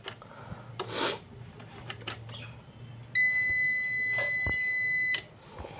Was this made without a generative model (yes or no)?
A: yes